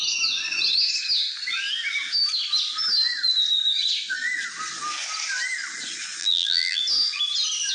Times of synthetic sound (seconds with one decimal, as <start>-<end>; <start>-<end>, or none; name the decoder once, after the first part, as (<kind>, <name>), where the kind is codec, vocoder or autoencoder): 6.2-6.8 (vocoder, BigVGAN v2)